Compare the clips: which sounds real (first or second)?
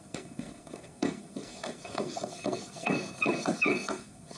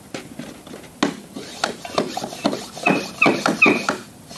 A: second